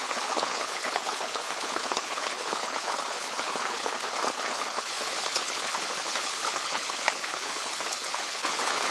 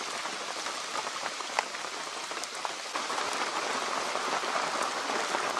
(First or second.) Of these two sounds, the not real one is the first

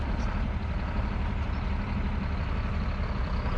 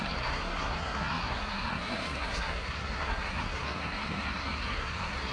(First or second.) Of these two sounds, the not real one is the second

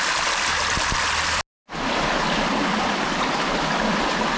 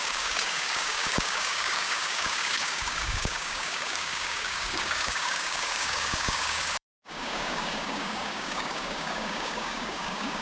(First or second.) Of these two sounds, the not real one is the second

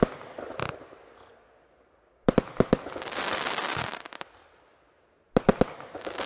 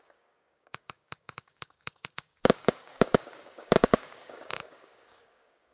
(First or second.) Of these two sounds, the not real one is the second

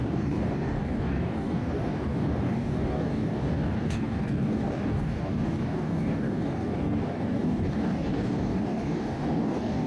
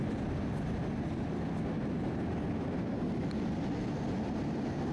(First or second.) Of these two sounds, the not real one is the first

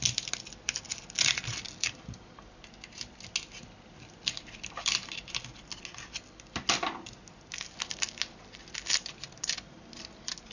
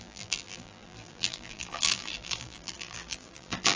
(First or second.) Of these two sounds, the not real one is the second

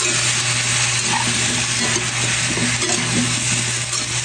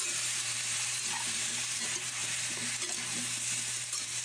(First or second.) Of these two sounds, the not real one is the second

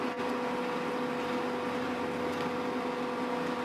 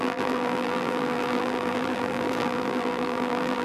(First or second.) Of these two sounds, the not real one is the second